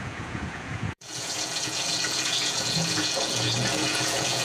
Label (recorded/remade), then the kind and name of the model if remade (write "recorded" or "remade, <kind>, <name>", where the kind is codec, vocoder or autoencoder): remade, vocoder, Vocos